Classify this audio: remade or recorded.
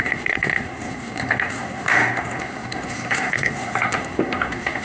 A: remade